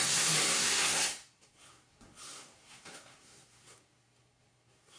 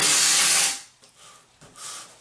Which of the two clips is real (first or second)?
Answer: second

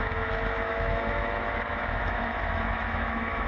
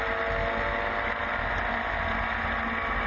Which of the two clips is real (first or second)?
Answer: second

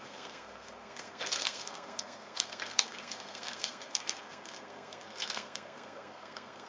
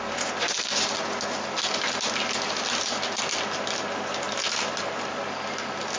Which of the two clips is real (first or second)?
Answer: second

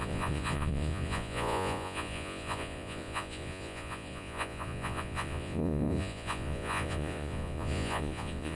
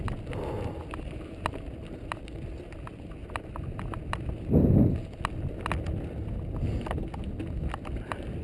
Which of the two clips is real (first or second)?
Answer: second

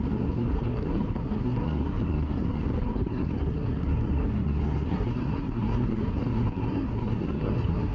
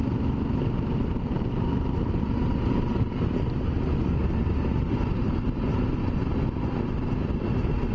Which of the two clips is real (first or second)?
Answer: second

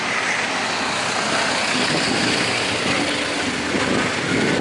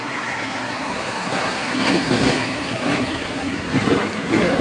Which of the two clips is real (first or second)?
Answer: first